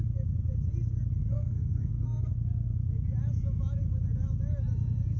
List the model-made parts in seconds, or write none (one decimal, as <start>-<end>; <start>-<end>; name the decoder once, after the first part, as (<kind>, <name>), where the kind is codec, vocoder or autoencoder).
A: 1.3-2.3 (codec, SNAC)